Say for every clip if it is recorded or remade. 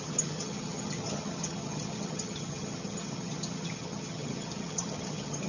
remade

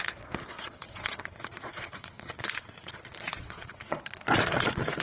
remade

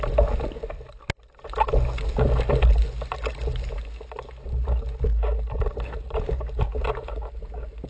recorded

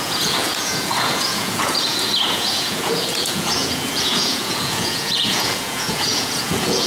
remade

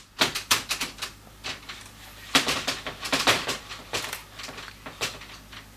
remade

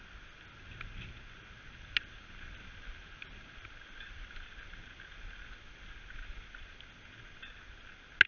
recorded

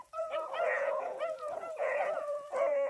remade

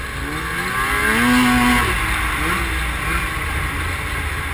recorded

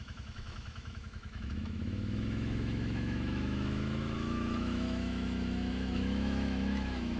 remade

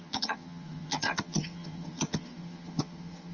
remade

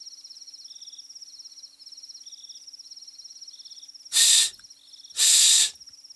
recorded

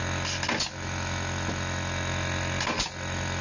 recorded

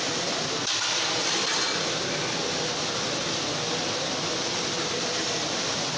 recorded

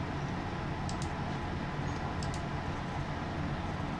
recorded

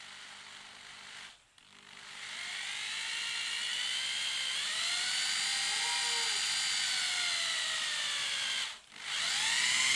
recorded